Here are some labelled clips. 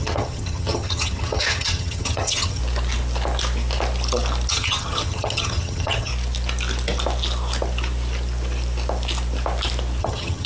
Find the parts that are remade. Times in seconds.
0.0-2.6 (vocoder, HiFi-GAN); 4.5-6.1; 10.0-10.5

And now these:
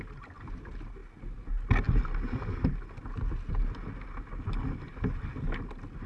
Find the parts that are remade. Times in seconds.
none

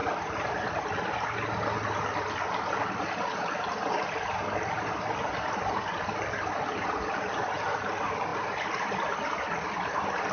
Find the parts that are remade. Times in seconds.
none

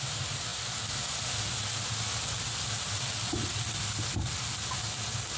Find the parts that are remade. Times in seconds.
none

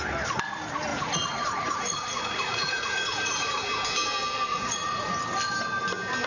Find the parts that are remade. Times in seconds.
0.9-3.7 (vocoder, Vocos); 4.5-5.1

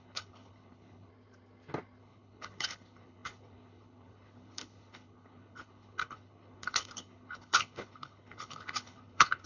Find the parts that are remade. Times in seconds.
0.0-1.1 (codec, HILCodec); 2.0-9.5